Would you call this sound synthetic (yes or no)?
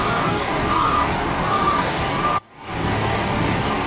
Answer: yes